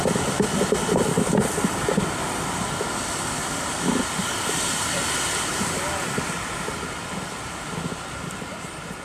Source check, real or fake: real